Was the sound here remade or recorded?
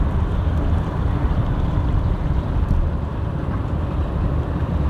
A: recorded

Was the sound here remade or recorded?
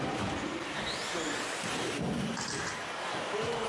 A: recorded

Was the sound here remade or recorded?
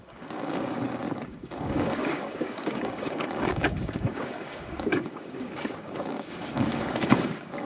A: remade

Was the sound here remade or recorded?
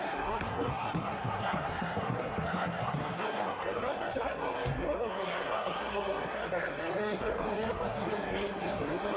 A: remade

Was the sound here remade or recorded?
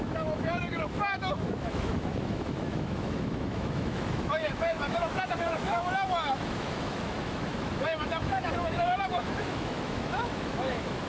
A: remade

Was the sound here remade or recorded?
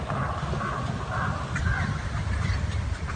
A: recorded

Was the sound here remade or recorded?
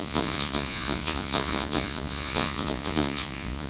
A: remade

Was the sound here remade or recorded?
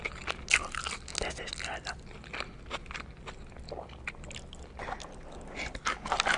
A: recorded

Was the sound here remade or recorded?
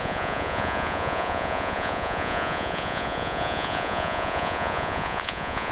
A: remade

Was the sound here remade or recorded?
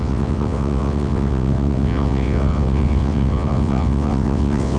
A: remade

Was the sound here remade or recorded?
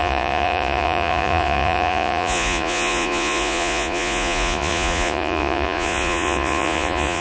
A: remade